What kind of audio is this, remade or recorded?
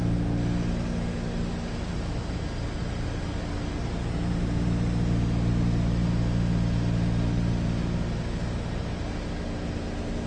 recorded